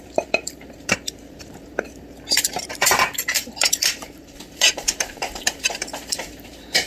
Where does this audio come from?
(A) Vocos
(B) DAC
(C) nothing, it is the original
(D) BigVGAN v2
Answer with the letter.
D